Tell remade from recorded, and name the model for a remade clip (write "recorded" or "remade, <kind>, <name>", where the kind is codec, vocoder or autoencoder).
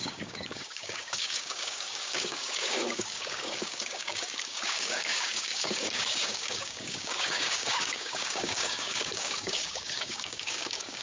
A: remade, codec, DAC